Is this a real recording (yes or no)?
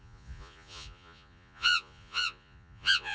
no